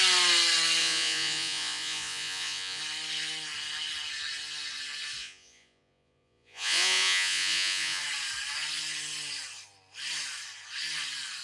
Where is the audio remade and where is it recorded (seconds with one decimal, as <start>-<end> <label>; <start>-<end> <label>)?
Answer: 0.0-0.8 recorded; 0.8-2.8 remade; 2.8-5.2 recorded; 5.2-8.0 remade; 8.0-11.4 recorded